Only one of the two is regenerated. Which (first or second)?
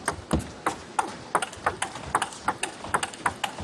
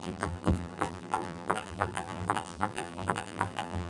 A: second